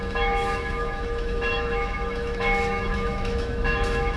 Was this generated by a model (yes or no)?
yes